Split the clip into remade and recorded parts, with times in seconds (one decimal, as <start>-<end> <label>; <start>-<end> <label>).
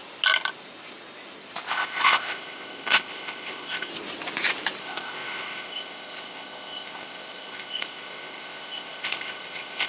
0.0-1.7 recorded; 1.7-3.9 remade; 3.9-4.8 recorded; 4.8-9.9 remade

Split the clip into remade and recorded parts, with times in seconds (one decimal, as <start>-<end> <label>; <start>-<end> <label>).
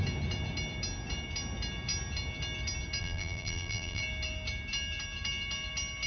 0.0-3.0 recorded; 3.0-4.0 remade; 4.0-6.1 recorded